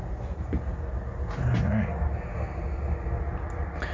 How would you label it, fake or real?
real